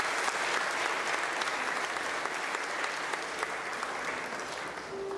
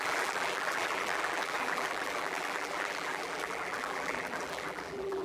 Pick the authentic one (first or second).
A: first